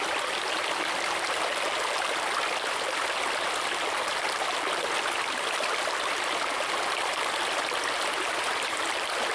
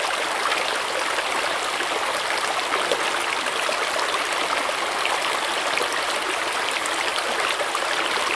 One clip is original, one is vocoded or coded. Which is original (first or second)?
second